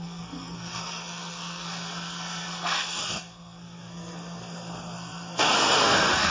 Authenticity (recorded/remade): remade